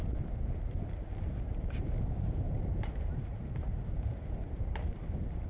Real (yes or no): no